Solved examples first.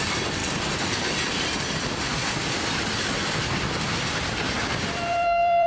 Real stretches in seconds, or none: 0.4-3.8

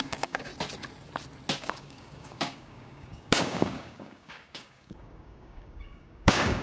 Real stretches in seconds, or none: 0.5-1.6

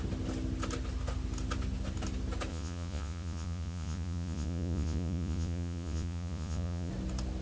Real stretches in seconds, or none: 0.0-2.5; 6.9-7.4

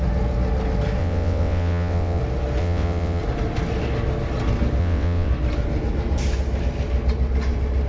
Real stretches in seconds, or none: 0.0-1.0; 2.2-2.6; 3.2-4.8; 5.3-7.9

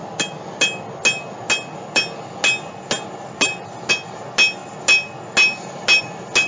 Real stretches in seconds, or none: 0.0-6.5

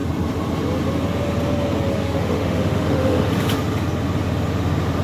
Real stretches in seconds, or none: 0.0-1.9; 3.3-5.0